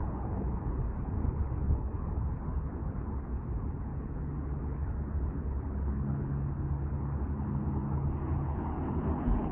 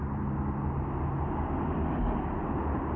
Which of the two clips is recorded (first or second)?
second